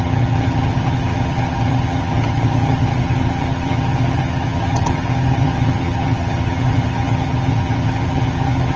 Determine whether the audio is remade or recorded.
remade